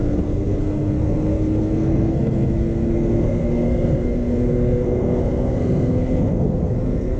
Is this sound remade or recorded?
remade